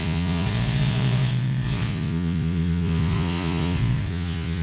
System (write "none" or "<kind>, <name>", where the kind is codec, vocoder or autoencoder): vocoder, Vocos